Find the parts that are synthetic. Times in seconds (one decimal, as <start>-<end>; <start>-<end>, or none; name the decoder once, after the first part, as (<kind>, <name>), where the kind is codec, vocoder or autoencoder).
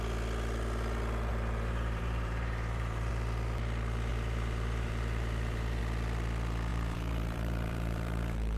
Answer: 1.3-3.1 (vocoder, BigVGAN v2); 4.1-5.8; 6.7-8.6